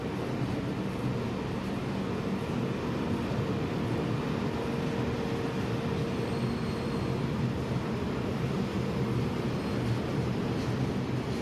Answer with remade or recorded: recorded